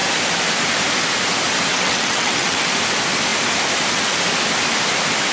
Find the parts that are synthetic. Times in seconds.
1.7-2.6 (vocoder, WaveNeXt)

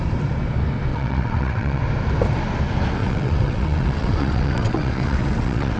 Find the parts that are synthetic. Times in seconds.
0.9-1.8 (vocoder, WaveNeXt); 3.0-5.8